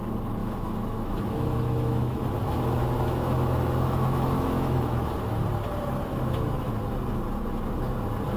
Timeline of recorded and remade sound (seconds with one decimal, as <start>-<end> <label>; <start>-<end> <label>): 0.0-0.4 recorded; 0.4-5.4 remade; 5.4-6.1 recorded; 6.1-6.7 remade; 6.7-8.4 recorded